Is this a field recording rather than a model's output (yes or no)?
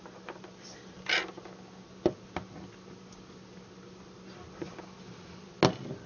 yes